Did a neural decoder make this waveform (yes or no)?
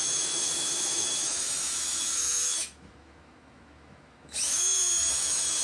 yes